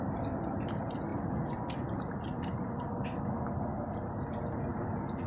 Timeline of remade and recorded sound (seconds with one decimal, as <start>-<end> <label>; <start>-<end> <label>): 0.0-1.1 remade; 1.1-2.0 recorded; 2.0-5.3 remade